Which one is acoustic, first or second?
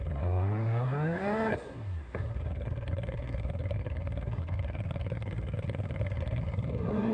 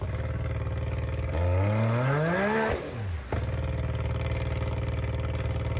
second